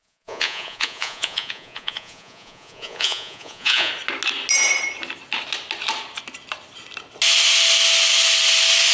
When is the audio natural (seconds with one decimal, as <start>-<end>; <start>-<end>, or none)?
3.9-8.9